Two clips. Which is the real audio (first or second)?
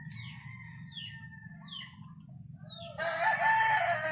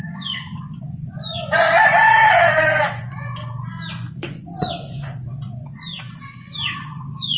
first